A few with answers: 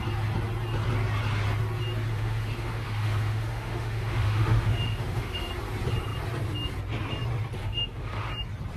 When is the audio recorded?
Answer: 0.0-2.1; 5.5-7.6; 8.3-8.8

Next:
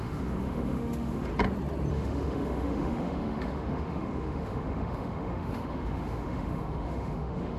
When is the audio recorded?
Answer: 1.3-1.9

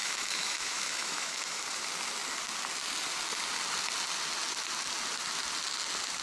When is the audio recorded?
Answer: 1.6-6.2